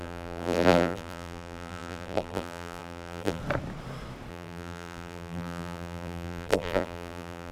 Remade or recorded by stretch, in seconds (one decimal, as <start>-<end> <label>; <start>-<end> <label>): 0.0-3.4 remade; 3.4-4.3 recorded; 4.3-7.5 remade